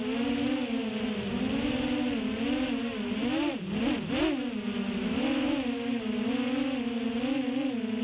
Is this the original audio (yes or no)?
yes